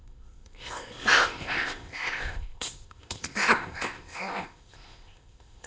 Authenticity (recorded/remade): remade